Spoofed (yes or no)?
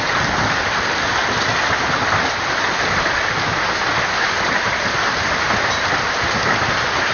no